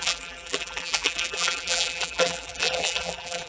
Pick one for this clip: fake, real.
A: fake